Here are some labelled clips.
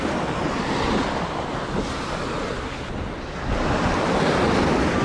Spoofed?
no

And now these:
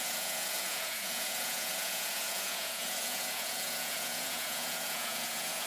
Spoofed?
yes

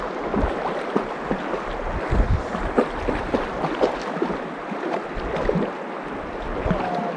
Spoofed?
no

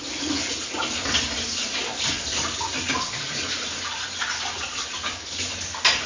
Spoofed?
no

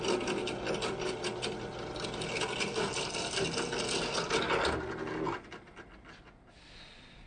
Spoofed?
no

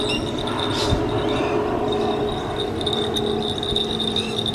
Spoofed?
no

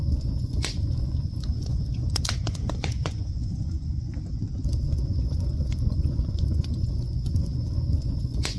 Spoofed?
yes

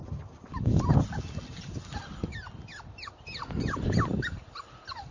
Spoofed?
no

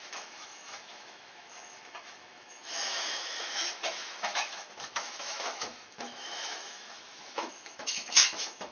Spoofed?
yes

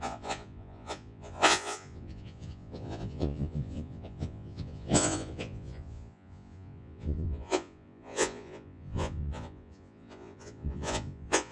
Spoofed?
yes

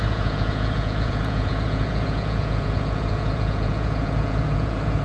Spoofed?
yes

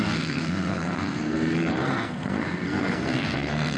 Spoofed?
yes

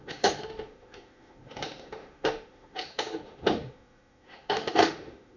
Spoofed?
yes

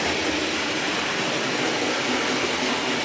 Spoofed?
no